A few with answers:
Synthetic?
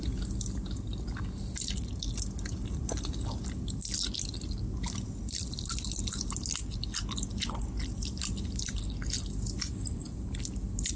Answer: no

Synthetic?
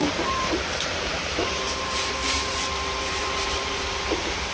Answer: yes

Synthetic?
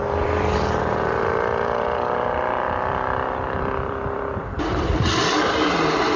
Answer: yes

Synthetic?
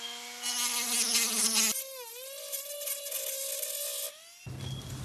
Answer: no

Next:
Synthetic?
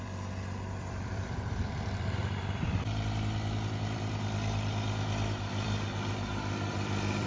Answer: yes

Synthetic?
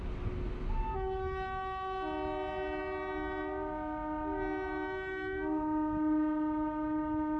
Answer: no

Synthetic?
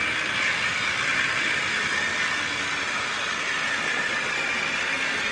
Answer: no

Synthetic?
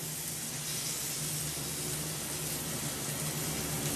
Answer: no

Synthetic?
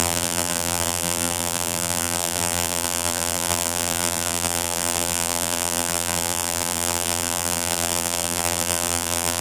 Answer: yes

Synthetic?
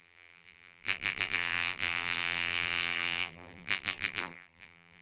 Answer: yes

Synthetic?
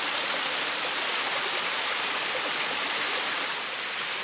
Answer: no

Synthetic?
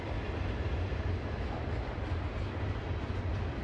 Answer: no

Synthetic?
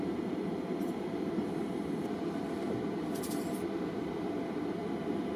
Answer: yes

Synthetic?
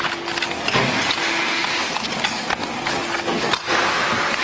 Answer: no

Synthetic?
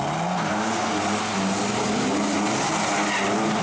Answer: no